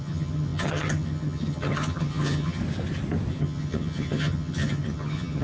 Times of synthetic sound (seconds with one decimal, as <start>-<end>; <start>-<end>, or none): 0.0-2.6; 3.3-5.4